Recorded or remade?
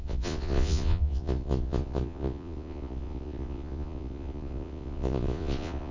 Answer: remade